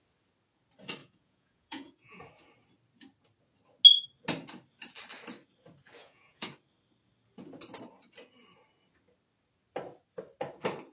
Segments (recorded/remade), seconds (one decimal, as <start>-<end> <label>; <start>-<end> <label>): 0.0-1.0 recorded; 1.0-2.2 remade; 2.2-6.0 recorded; 6.0-6.5 remade; 6.5-10.9 recorded